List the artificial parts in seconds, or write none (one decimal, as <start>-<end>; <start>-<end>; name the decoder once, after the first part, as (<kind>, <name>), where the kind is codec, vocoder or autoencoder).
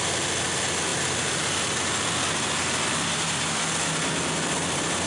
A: none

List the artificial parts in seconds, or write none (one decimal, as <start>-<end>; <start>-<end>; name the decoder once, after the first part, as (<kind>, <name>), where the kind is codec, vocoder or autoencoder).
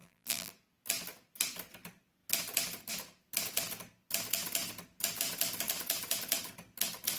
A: 0.0-0.5 (vocoder, BigVGAN v2)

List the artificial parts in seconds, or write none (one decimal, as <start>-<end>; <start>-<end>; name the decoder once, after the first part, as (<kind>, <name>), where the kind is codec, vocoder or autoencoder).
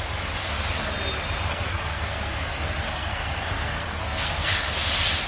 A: 1.5-4.7 (codec, SNAC)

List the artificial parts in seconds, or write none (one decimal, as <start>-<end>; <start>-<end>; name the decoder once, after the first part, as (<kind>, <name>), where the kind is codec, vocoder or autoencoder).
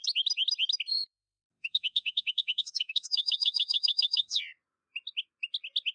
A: 0.9-4.4 (autoencoder, DAC-VAE)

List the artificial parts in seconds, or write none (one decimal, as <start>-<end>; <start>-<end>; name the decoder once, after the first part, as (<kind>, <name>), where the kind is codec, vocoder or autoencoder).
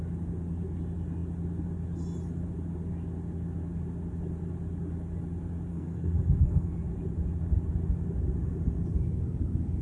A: 5.7-6.7 (codec, SNAC)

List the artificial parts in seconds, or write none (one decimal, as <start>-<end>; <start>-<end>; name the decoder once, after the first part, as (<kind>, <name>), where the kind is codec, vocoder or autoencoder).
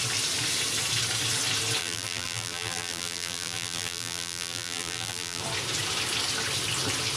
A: 1.8-5.4 (vocoder, BigVGAN v2)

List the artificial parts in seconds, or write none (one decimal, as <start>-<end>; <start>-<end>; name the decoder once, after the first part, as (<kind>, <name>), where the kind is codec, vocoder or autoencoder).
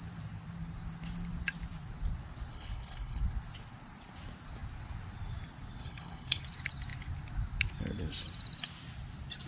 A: 2.5-3.2 (codec, HILCodec); 5.8-6.4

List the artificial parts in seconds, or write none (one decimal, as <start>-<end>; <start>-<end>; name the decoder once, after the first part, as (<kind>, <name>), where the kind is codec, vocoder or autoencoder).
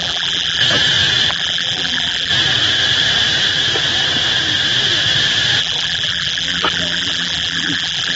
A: 0.0-0.6 (vocoder, BigVGAN v2); 1.3-2.3; 5.6-8.2